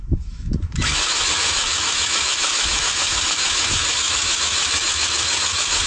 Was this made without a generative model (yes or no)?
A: no